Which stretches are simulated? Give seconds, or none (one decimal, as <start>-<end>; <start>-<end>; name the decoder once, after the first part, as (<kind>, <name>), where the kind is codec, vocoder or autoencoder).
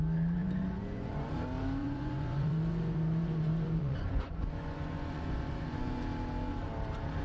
0.4-1.3 (vocoder, Vocos); 1.8-6.0